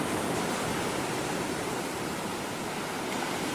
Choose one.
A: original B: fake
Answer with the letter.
B